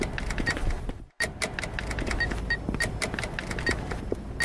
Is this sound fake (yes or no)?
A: no